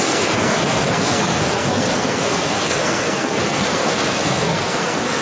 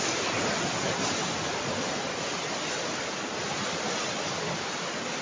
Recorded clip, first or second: second